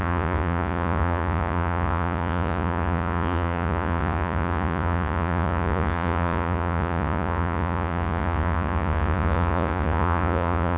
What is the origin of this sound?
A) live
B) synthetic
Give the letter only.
B